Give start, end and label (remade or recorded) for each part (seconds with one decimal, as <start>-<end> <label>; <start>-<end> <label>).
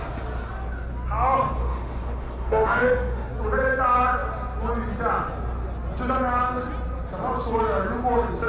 0.0-1.6 recorded; 1.6-3.3 remade; 3.3-8.5 recorded